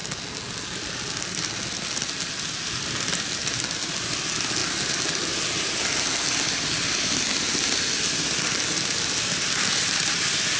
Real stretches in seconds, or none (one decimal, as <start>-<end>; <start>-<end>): 0.0-10.6